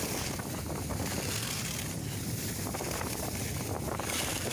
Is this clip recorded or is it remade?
recorded